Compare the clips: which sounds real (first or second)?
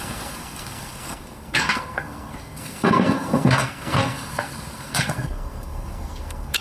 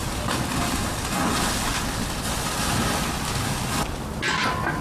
second